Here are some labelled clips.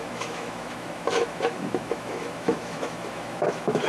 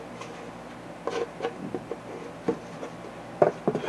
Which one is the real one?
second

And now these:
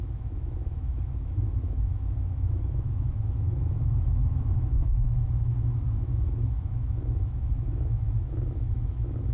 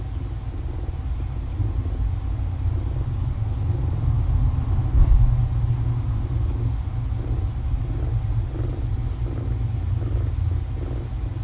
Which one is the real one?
second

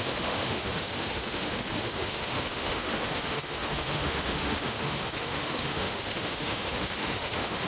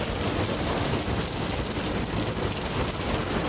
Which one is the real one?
second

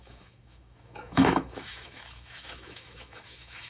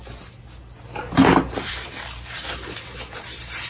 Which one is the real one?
second